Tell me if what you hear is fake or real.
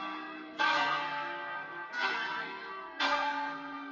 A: fake